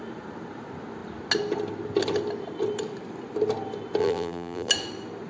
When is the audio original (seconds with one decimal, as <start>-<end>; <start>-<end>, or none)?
0.0-4.0; 4.7-5.3